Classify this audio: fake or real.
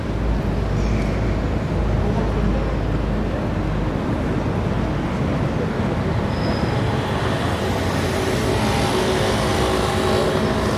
real